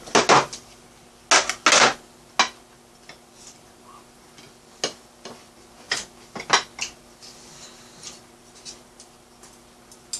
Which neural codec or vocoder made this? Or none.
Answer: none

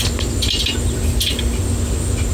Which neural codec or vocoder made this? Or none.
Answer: none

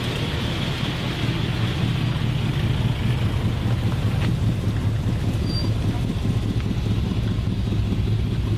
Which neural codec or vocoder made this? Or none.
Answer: none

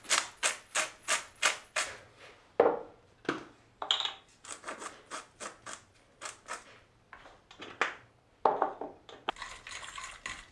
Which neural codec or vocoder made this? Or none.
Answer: none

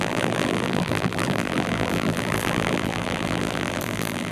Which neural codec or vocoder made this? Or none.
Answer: vocoder, BigVGAN v2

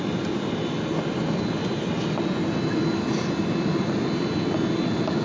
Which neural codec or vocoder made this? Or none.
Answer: none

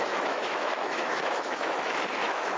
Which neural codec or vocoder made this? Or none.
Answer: autoencoder, DAC-VAE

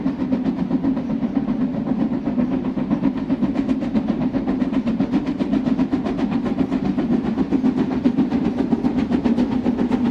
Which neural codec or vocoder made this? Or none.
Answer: none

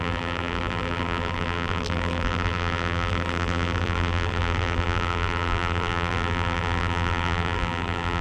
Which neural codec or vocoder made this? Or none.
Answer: vocoder, BigVGAN v2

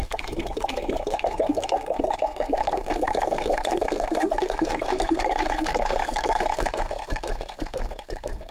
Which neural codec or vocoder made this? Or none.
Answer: codec, SNAC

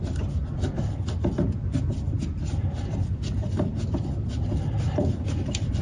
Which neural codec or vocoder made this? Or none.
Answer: vocoder, BigVGAN v2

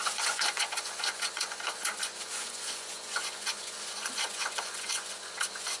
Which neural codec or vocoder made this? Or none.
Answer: vocoder, Vocos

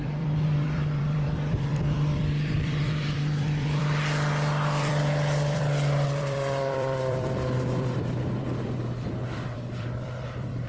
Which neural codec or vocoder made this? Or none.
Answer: vocoder, BigVGAN v2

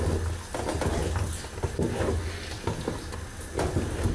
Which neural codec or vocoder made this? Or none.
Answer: none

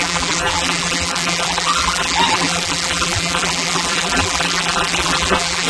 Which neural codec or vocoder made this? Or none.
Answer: vocoder, BigVGAN v2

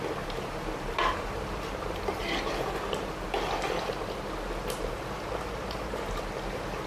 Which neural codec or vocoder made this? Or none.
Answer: none